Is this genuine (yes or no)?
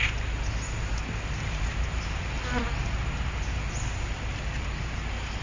yes